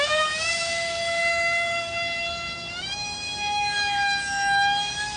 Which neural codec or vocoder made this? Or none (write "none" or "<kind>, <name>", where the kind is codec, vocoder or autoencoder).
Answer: autoencoder, DAC-VAE